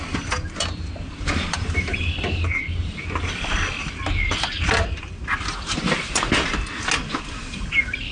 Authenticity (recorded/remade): recorded